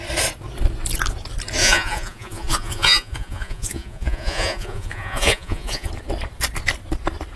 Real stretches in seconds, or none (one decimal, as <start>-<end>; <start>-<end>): 0.0-1.6; 5.9-7.4